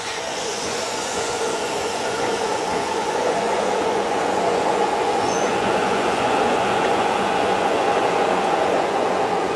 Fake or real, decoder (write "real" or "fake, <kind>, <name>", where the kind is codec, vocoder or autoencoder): fake, vocoder, Vocos